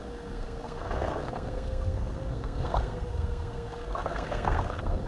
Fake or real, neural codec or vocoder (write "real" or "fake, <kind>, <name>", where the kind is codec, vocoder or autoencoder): fake, codec, SNAC